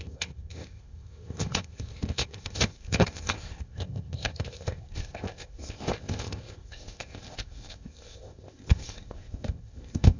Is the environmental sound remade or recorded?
remade